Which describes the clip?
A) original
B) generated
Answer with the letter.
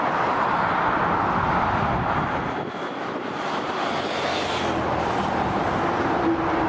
A